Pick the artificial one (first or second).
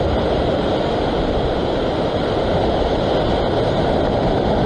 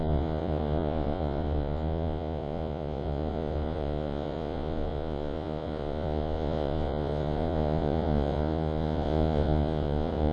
second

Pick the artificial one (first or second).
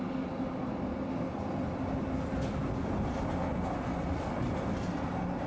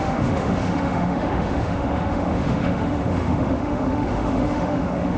second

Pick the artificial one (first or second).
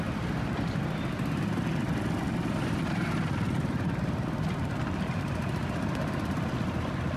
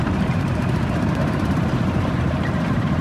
second